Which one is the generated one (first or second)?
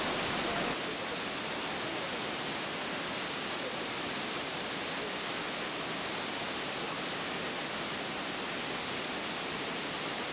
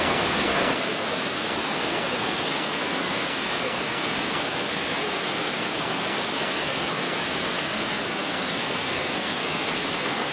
second